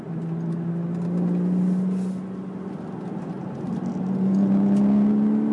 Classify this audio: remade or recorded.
recorded